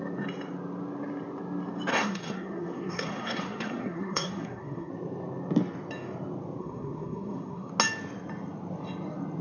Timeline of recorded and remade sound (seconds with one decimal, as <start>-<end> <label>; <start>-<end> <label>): 0.0-1.9 recorded; 1.9-4.9 remade; 4.9-6.6 recorded; 6.6-7.7 remade; 7.7-9.4 recorded